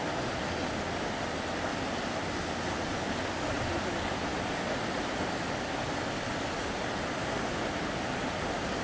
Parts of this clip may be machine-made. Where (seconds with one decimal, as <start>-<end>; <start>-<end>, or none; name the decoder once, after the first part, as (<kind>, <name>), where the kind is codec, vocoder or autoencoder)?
none